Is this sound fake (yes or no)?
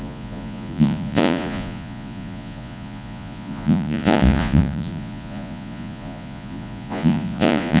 yes